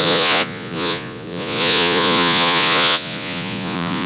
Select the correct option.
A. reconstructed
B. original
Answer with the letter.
A